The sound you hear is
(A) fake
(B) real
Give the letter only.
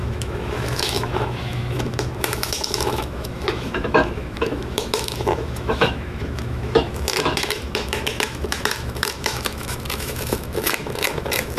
A